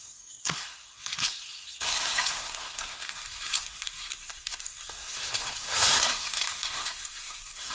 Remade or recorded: remade